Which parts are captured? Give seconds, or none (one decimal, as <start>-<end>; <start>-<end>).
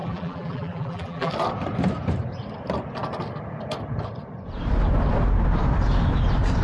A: 1.3-6.6